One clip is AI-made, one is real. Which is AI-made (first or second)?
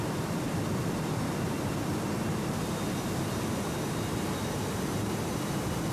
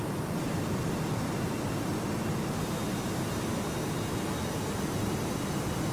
first